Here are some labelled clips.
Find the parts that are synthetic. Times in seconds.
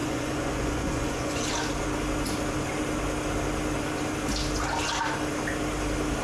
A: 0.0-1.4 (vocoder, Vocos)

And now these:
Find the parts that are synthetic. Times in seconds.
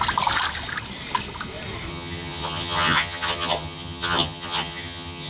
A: 1.9-5.3 (vocoder, HiFi-GAN)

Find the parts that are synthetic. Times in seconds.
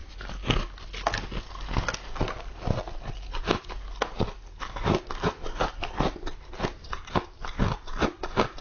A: 6.8-7.6 (vocoder, BigVGAN v2)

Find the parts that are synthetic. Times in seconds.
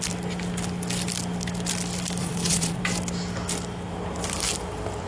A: 2.2-2.8 (vocoder, Vocos)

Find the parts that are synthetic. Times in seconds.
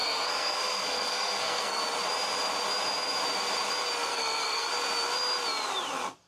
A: 0.0-1.8 (codec, SNAC); 4.1-4.7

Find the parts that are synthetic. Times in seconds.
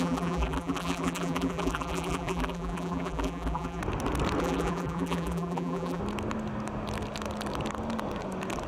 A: 0.0-3.8 (vocoder, BigVGAN v2); 4.4-6.0